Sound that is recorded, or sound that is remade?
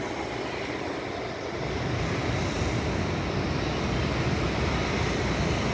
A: recorded